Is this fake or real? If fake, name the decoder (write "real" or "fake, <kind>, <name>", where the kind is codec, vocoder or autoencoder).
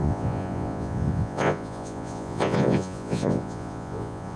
fake, vocoder, Vocos